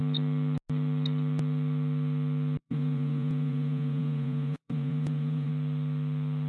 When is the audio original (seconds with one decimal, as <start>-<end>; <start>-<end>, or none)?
0.0-2.6; 5.5-6.5